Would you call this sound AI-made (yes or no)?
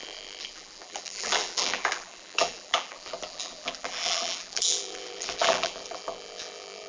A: yes